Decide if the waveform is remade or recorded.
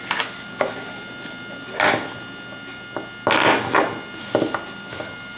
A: recorded